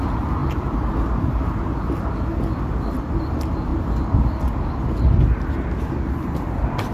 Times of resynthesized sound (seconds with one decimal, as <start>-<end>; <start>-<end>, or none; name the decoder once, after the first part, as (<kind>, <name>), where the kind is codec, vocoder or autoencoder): none